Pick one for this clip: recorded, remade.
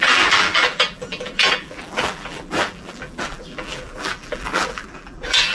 remade